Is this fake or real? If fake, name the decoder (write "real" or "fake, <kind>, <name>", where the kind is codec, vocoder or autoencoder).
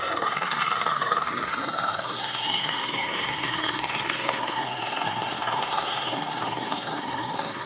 fake, codec, SNAC